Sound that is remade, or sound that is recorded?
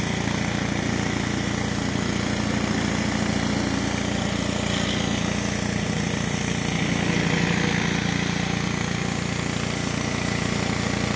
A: recorded